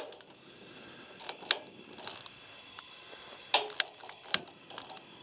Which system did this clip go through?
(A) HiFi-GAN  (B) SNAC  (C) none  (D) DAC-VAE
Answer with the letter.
C